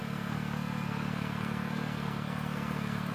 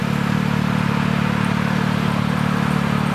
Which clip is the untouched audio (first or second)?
second